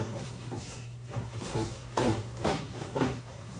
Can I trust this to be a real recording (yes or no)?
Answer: no